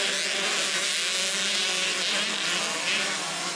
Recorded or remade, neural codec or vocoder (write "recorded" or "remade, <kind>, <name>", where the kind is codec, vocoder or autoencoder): recorded